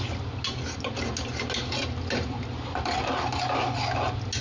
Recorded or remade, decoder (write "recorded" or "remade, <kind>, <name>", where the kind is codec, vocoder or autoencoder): recorded